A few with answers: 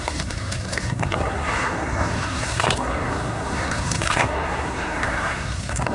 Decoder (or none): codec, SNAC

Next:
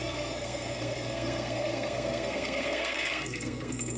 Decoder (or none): codec, SNAC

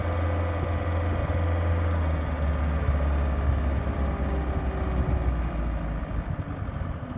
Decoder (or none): none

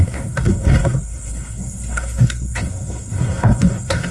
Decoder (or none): codec, SNAC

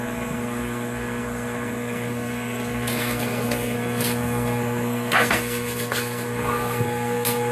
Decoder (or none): codec, SNAC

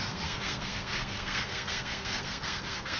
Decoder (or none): codec, SNAC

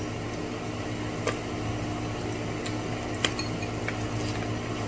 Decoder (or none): none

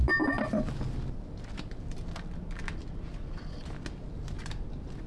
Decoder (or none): none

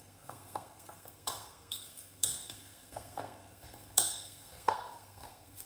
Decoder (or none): codec, SNAC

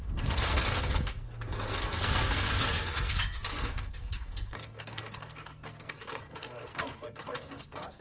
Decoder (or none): codec, SNAC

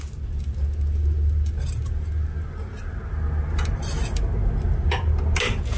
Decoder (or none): none